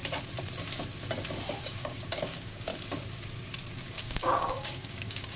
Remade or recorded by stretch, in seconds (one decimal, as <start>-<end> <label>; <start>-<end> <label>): 0.0-1.6 recorded; 1.6-2.7 remade; 2.7-3.7 recorded; 3.7-5.4 remade